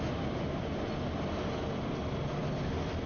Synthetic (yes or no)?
no